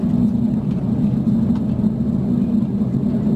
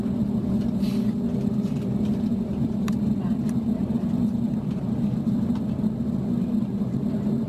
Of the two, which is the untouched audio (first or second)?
first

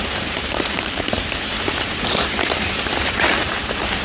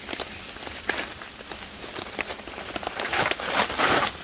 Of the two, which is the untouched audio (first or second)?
second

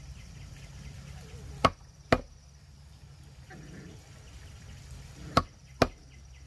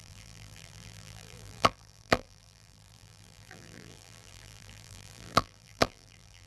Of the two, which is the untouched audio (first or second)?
first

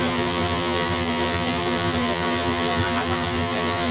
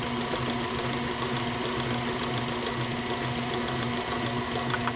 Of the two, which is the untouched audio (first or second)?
second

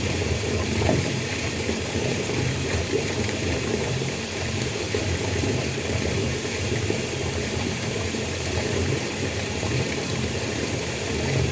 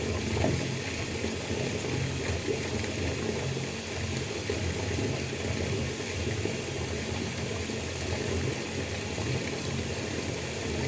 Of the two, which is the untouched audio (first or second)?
second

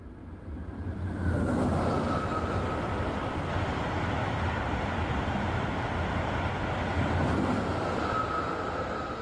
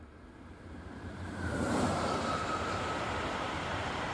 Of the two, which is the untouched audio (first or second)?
first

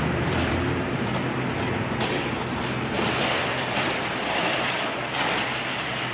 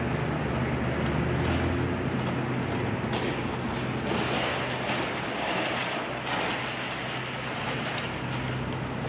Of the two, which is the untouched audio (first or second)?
second